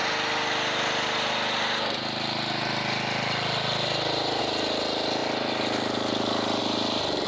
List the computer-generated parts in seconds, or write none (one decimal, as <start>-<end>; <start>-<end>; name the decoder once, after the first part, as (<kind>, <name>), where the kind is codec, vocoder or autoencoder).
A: none